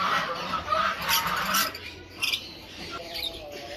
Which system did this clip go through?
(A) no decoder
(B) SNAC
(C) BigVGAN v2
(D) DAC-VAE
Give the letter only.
C